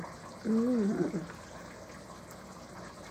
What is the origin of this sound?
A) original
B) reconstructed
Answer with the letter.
A